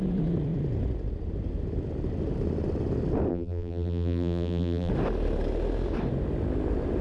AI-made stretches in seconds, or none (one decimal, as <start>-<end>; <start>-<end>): 3.3-4.9